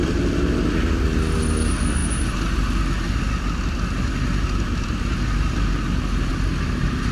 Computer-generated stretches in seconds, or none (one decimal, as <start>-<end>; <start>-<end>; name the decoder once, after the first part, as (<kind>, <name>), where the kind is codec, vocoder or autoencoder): none